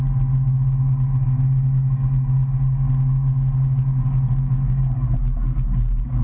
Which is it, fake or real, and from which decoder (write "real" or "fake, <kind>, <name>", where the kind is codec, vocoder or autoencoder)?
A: real